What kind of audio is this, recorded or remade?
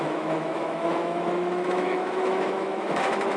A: remade